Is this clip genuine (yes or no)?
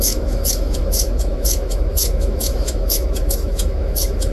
no